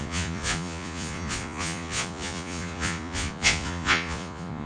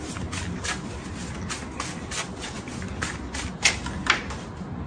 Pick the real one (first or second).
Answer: second